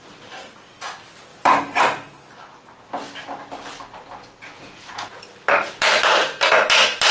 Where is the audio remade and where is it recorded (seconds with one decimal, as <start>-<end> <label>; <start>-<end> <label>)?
0.0-4.5 recorded; 4.5-5.2 remade; 5.2-7.1 recorded